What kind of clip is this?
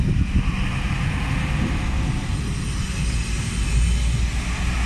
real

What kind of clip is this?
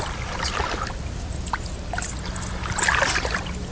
real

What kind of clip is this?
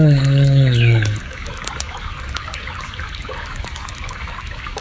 fake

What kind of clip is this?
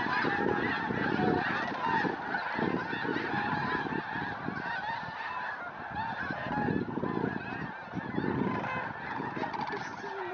real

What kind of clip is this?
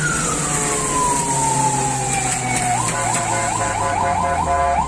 real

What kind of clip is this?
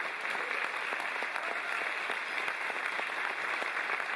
real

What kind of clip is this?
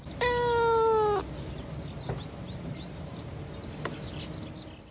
real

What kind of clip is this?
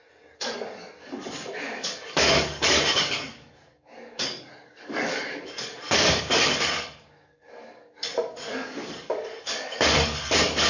fake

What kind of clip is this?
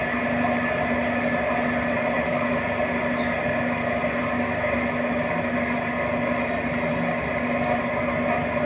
real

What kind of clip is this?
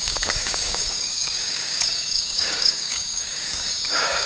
fake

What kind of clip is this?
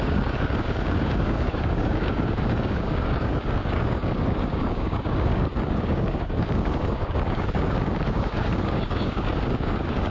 fake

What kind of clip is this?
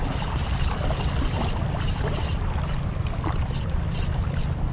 real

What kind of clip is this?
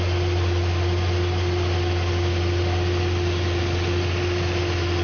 real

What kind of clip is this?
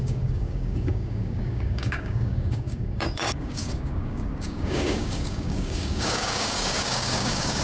fake